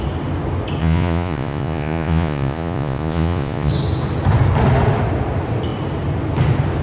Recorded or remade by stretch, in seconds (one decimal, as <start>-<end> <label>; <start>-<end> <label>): 0.0-0.8 recorded; 0.8-3.7 remade; 3.7-6.8 recorded